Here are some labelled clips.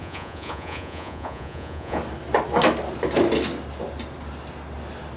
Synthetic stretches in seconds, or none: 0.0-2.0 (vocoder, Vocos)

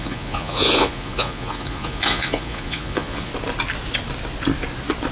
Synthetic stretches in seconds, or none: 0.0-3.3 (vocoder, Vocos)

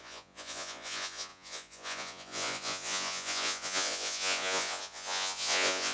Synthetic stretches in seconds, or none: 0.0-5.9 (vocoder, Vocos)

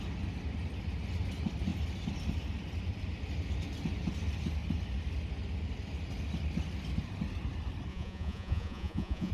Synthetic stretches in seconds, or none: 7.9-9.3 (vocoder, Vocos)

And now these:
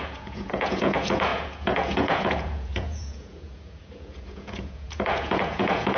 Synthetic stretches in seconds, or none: 0.0-6.0 (vocoder, Vocos)

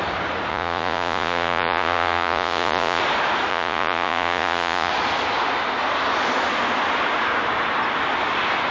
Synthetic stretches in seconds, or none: 0.5-3.0 (vocoder, Vocos); 3.5-4.9

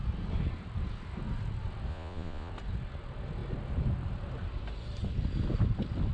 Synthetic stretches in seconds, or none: 1.9-2.5 (vocoder, Vocos)

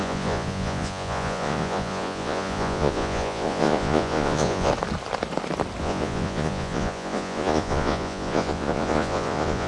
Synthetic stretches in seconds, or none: 0.0-4.7 (vocoder, Vocos); 5.8-9.7